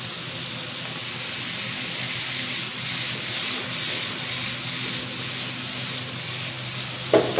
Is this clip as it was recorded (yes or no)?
yes